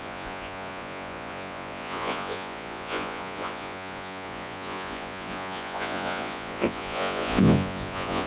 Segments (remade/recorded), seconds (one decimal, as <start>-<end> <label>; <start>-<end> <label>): 0.0-8.3 remade

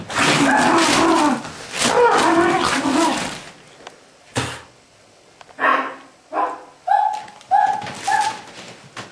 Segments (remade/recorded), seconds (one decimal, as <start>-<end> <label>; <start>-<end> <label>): 0.0-9.1 recorded

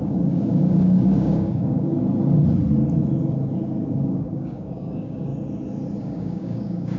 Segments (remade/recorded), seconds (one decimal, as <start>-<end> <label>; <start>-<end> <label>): 0.0-1.9 remade; 1.9-3.9 recorded; 3.9-5.3 remade; 5.3-6.0 recorded; 6.0-7.0 remade

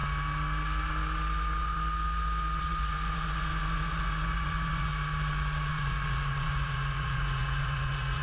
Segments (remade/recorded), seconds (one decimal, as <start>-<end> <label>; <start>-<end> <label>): 0.0-2.6 recorded; 2.6-4.9 remade; 4.9-5.7 recorded; 5.7-8.2 remade

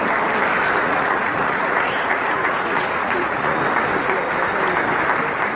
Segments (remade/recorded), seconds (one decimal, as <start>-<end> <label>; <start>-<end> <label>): 0.0-0.8 recorded; 0.8-3.6 remade; 3.6-5.6 recorded

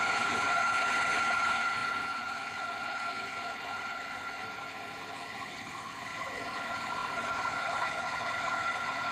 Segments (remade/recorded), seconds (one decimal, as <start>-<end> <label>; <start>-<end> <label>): 0.0-9.1 remade

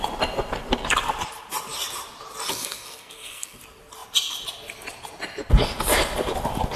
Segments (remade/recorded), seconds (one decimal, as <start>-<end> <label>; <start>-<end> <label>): 0.0-2.5 recorded; 2.5-3.6 remade; 3.6-6.8 recorded

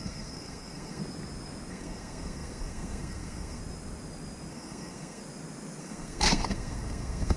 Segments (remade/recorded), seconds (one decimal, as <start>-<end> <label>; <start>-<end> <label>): 0.0-1.0 remade; 1.0-1.7 recorded; 1.7-3.6 remade; 3.6-4.5 recorded; 4.5-5.2 remade; 5.2-5.8 recorded; 5.8-7.4 remade